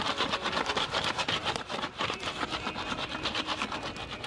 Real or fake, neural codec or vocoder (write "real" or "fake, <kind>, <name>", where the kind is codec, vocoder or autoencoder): real